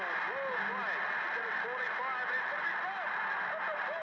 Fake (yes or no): no